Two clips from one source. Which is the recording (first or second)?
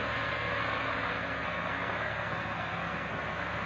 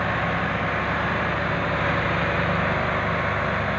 second